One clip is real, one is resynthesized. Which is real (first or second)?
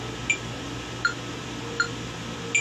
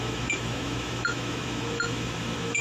first